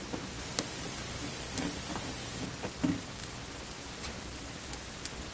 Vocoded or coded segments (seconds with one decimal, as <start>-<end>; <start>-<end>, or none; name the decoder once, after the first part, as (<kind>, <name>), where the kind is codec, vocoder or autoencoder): 1.3-1.9 (vocoder, BigVGAN v2)